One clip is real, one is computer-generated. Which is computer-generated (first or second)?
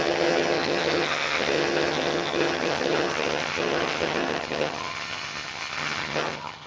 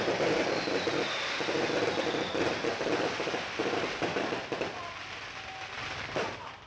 first